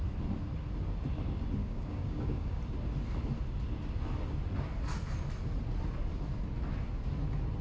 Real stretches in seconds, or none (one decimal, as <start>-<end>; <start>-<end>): 0.0-1.6; 2.6-7.6